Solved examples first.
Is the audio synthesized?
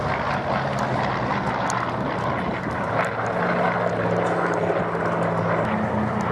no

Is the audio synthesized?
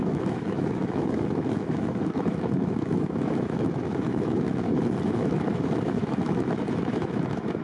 yes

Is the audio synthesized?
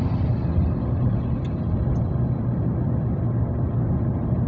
no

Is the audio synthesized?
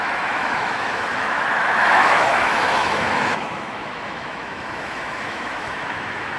yes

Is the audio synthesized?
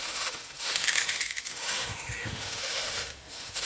yes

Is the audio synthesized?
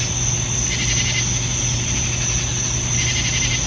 no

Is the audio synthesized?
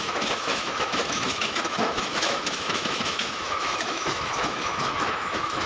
yes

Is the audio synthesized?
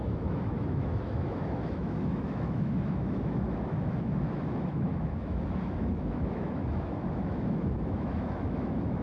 yes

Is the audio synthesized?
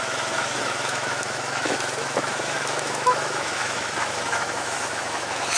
yes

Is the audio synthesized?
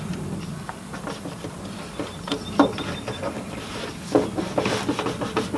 no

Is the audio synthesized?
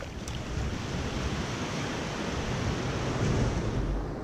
no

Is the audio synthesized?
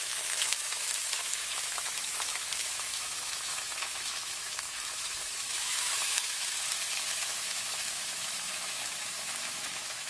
yes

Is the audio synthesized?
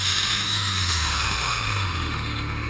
yes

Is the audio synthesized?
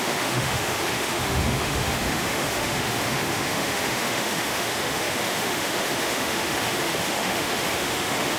yes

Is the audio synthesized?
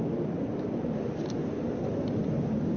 no